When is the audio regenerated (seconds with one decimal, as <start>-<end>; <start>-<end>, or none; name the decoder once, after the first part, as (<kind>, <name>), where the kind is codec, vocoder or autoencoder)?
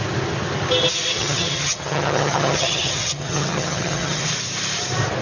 1.1-4.2 (vocoder, HiFi-GAN)